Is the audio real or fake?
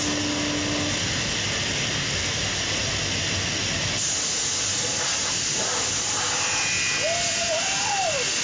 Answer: real